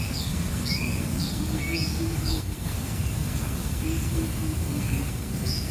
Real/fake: fake